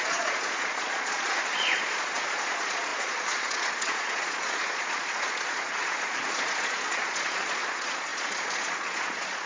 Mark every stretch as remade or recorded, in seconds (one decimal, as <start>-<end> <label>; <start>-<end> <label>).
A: 0.0-9.5 remade